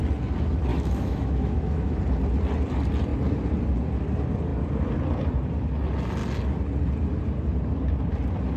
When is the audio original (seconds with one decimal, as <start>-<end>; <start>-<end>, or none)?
0.0-0.7; 2.0-8.6